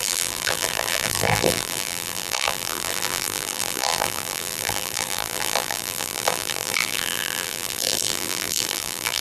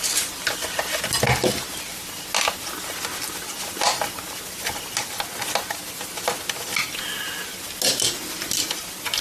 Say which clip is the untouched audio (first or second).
second